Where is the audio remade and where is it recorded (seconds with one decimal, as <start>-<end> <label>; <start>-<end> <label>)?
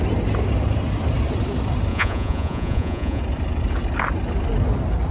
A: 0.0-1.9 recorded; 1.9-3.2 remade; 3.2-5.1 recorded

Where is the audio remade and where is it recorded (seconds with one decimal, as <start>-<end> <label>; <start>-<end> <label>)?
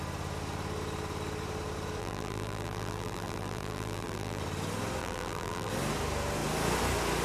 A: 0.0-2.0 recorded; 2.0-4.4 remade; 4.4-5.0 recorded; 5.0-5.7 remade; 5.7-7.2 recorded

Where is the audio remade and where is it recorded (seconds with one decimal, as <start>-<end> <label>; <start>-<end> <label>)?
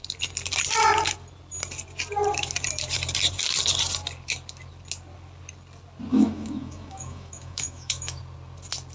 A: 0.0-6.1 recorded; 6.1-8.2 remade; 8.2-8.9 recorded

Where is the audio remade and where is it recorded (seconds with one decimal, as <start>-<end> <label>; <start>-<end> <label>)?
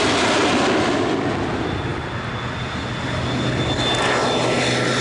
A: 0.0-5.0 recorded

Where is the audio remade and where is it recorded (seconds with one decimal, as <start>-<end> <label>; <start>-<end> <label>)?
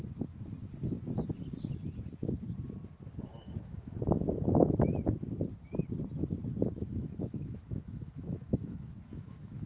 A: 0.0-3.3 recorded; 3.3-4.3 remade; 4.3-6.9 recorded; 6.9-9.7 remade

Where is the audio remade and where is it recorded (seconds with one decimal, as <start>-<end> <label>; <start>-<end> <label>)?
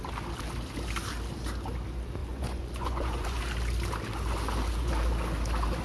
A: 0.0-2.2 recorded; 2.2-3.4 remade; 3.4-5.8 recorded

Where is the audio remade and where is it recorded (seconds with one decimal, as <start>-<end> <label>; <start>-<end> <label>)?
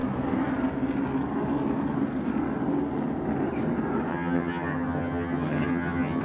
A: 0.0-4.1 recorded; 4.1-6.2 remade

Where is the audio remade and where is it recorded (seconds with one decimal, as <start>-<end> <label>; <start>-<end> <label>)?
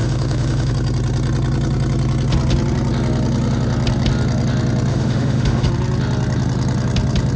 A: 0.0-0.7 remade; 0.7-4.9 recorded; 4.9-5.7 remade; 5.7-7.4 recorded